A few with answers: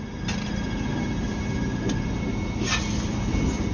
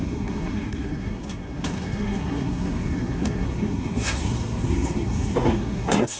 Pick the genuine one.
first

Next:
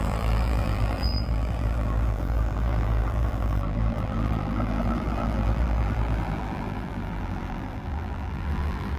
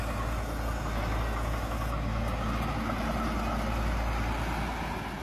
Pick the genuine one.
second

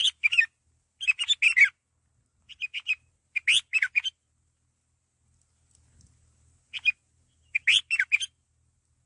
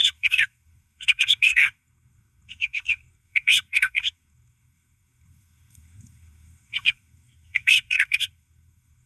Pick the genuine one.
first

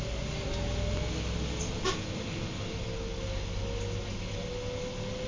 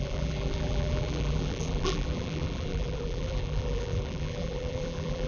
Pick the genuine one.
first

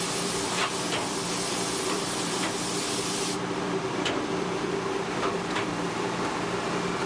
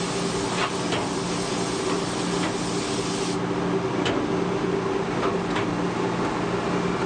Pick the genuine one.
second